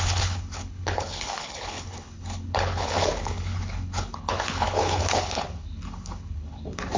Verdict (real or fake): fake